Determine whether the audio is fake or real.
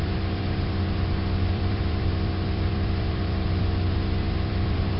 fake